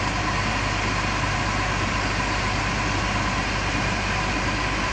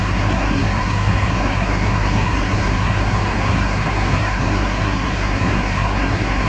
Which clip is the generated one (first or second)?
second